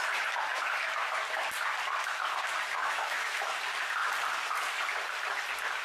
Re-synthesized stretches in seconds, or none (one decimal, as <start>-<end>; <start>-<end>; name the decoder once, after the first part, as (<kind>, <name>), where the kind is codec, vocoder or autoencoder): 2.7-3.5 (autoencoder, DAC-VAE)